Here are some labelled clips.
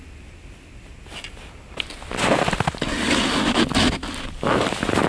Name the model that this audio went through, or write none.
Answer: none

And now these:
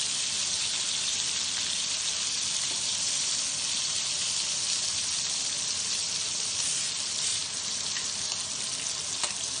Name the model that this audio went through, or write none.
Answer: none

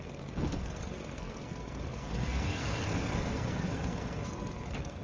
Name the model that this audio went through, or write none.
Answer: codec, SNAC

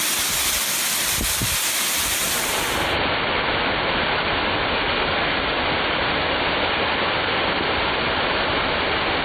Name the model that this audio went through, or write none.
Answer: none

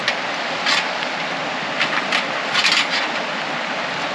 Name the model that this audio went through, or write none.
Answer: none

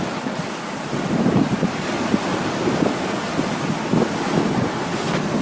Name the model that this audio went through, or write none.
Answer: none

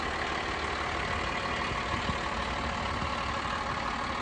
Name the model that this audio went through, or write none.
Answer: none